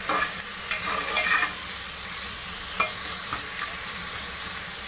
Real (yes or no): yes